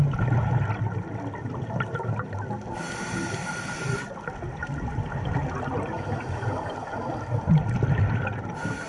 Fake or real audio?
real